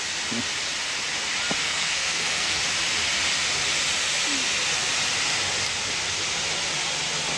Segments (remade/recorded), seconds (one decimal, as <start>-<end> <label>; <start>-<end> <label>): 0.0-1.6 recorded; 1.6-2.6 remade; 2.6-7.4 recorded